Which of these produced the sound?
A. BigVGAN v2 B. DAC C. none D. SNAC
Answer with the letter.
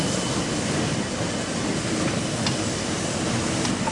C